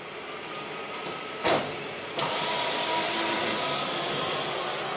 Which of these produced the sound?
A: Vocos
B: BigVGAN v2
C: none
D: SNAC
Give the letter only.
C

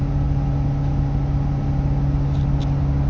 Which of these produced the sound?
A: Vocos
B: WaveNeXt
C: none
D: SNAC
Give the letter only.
C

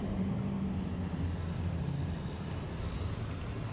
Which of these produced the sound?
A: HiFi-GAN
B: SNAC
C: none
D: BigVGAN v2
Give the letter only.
C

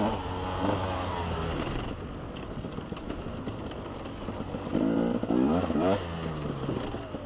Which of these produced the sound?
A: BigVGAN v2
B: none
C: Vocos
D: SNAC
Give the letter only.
B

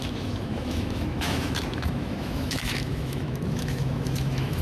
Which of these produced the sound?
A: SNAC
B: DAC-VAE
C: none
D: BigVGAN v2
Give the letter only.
B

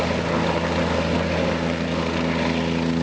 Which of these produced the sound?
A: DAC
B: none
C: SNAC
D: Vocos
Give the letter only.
B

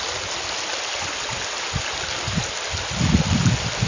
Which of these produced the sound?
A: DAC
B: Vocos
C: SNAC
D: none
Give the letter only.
D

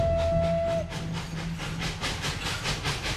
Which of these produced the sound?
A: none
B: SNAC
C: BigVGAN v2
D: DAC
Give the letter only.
A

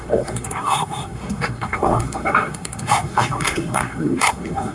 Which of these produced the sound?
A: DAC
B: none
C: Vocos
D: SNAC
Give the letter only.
D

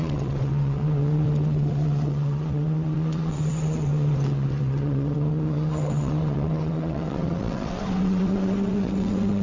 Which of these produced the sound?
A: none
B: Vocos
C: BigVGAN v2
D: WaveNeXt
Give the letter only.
D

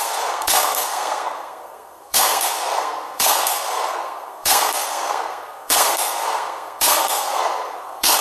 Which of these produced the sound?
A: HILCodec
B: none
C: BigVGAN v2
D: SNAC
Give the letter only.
D